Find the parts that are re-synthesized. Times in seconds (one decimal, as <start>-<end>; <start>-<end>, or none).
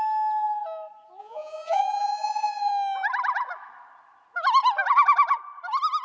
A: 1.2-2.7